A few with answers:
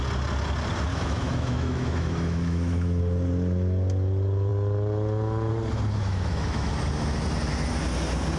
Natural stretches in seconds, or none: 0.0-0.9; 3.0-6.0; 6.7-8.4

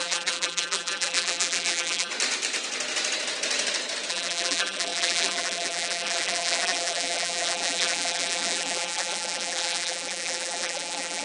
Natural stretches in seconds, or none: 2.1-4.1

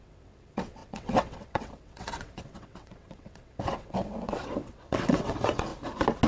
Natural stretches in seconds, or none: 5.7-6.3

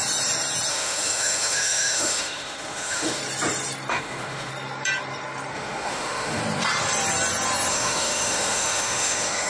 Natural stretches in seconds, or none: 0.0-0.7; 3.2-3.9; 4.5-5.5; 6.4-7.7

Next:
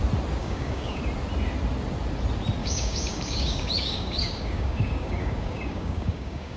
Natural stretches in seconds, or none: 0.0-0.4; 1.0-2.6

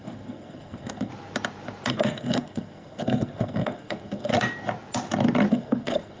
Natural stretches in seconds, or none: 1.1-1.9; 4.3-5.5

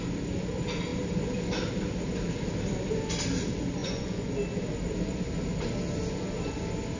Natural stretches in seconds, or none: 0.0-3.8; 4.3-7.0